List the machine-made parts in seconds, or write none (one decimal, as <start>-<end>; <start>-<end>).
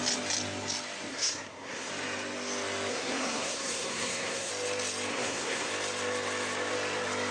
1.1-1.9; 2.9-4.5; 5.1-5.7